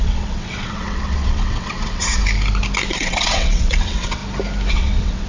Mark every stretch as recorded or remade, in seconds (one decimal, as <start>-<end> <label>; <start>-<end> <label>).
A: 0.0-2.2 remade; 2.2-2.9 recorded; 2.9-4.2 remade; 4.2-4.7 recorded; 4.7-5.3 remade